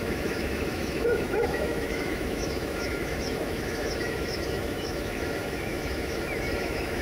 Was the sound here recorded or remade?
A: remade